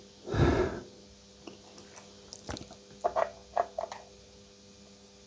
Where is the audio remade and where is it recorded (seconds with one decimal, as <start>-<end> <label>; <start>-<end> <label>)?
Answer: 0.0-5.3 recorded

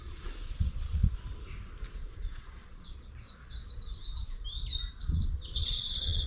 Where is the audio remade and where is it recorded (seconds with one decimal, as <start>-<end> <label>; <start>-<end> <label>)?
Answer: 0.0-1.0 remade; 1.0-1.9 recorded; 1.9-3.6 remade; 3.6-5.0 recorded; 5.0-6.3 remade

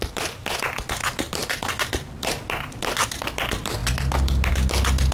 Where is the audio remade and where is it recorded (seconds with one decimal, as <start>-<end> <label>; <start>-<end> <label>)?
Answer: 0.0-3.8 remade; 3.8-4.5 recorded; 4.5-5.1 remade